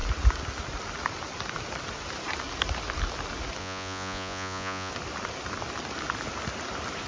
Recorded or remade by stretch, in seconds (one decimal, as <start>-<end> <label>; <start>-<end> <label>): 0.0-3.6 recorded; 3.6-4.9 remade; 4.9-7.1 recorded